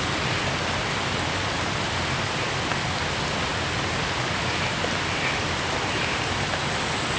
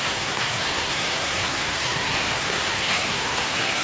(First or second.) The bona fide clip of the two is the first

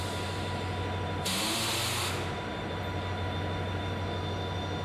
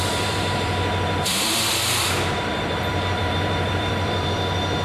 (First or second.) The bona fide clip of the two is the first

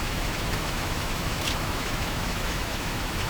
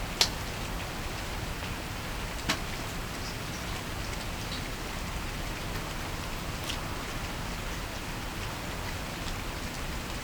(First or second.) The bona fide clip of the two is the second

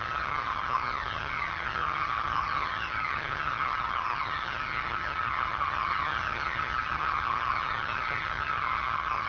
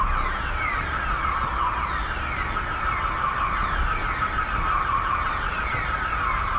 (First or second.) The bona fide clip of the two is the second